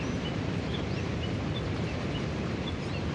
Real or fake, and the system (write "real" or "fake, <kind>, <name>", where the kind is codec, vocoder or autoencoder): real